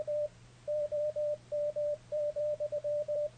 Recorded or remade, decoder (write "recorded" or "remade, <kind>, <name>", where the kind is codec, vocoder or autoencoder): remade, vocoder, BigVGAN v2